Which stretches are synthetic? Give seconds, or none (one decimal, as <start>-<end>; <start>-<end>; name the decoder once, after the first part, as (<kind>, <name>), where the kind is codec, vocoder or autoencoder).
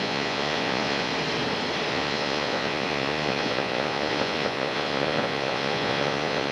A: 0.0-1.1 (vocoder, Vocos); 1.9-6.5